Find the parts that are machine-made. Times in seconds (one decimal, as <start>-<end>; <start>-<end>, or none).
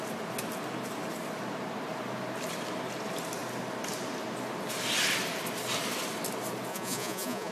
6.7-7.5